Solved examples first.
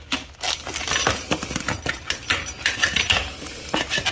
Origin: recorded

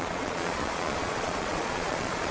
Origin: remade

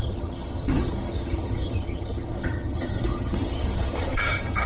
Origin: remade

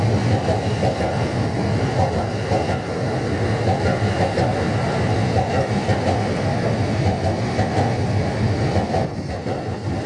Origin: recorded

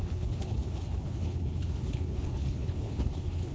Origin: remade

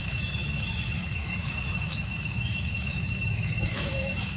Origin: remade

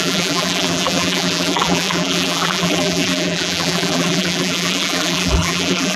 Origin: remade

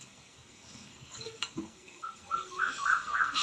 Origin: remade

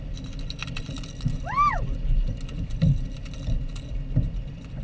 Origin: recorded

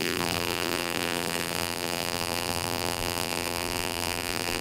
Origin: remade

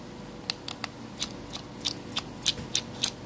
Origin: recorded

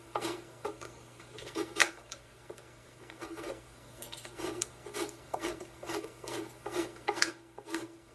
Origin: remade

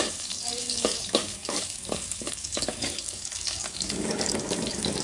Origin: remade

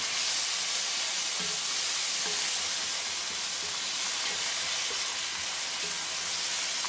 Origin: recorded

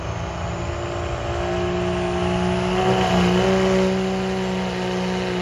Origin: recorded